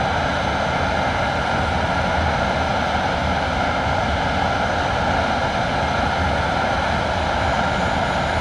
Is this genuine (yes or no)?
yes